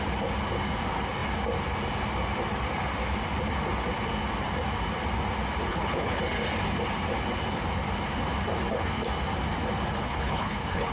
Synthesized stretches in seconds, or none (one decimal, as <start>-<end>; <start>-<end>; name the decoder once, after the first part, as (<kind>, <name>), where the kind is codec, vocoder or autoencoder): 5.7-6.2 (codec, HILCodec); 10.0-10.9